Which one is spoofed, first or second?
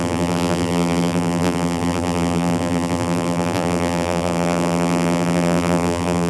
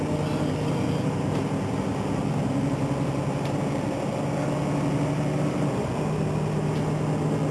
first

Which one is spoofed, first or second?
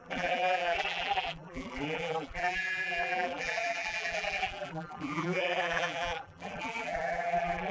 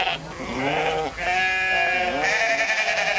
first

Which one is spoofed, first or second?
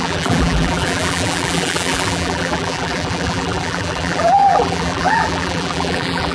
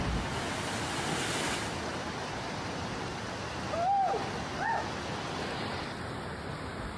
first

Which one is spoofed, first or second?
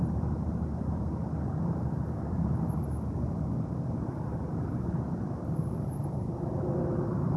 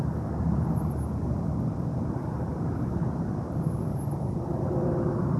first